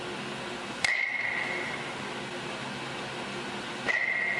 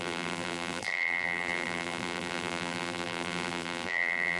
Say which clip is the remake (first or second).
second